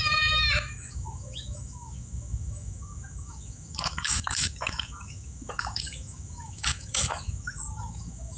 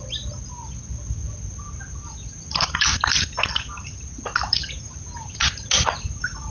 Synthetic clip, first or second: first